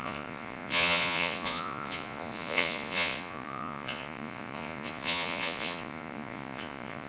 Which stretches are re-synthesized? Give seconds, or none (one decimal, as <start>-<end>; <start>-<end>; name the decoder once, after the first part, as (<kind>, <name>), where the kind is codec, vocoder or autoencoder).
0.0-7.1 (vocoder, Vocos)